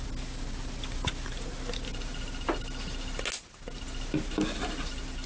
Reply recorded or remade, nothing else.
recorded